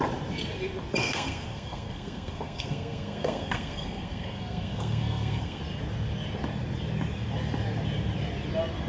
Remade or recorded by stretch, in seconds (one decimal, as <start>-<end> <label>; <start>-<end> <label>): 0.0-1.0 recorded; 1.0-5.6 remade; 5.6-8.9 recorded